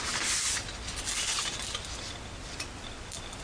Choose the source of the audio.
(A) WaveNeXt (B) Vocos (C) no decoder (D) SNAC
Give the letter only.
C